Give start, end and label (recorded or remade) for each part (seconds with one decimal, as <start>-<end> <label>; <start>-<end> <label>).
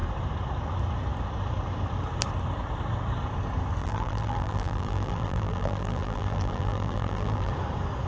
0.0-3.8 recorded; 3.8-7.5 remade; 7.5-8.1 recorded